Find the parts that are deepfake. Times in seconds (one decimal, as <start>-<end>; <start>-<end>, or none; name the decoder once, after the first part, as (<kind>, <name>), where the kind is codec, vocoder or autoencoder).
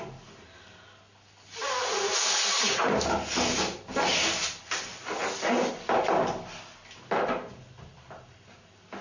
none